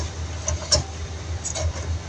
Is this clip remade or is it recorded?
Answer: recorded